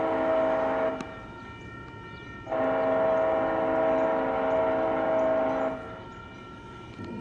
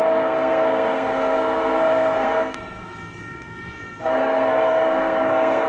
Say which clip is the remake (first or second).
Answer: second